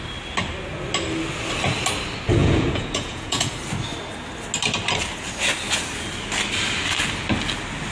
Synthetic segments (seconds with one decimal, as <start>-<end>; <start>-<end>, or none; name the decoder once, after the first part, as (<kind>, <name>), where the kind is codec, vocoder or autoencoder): 2.4-3.5 (vocoder, Vocos)